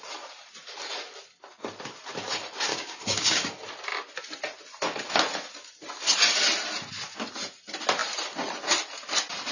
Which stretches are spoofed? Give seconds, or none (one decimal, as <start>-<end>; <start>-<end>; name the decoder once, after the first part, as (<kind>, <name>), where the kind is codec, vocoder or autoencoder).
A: 2.7-3.5 (codec, DAC)